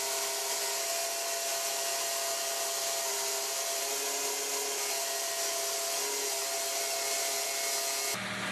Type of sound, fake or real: real